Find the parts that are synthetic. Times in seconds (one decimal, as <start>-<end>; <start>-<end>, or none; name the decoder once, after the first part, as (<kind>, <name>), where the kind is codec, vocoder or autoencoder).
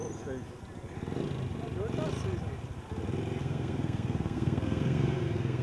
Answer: 3.4-5.6 (codec, SNAC)